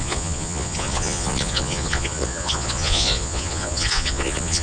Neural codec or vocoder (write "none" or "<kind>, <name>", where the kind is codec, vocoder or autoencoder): vocoder, Vocos